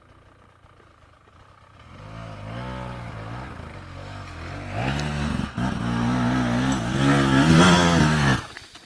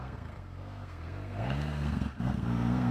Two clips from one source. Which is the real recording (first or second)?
first